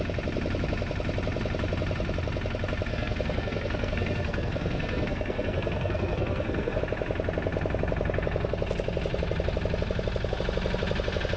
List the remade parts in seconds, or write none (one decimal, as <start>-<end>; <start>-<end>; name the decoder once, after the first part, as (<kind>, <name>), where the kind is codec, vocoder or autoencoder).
2.9-6.8 (codec, SNAC)